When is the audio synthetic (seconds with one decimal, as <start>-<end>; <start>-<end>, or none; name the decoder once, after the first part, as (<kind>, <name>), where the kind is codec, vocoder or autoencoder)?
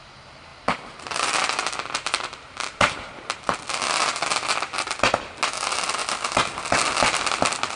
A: 0.5-3.6 (vocoder, BigVGAN v2)